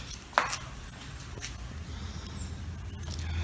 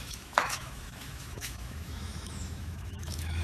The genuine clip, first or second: first